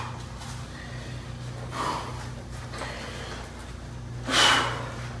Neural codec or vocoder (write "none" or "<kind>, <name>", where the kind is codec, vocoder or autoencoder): none